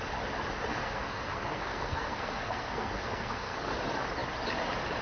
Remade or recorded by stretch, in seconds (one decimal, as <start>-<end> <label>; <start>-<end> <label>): 0.0-0.7 recorded; 0.7-3.7 remade; 3.7-5.0 recorded